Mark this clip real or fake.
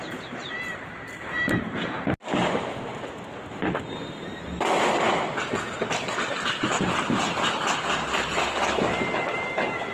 real